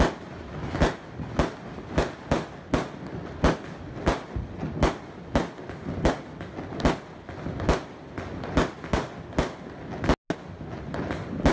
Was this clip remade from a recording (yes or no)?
no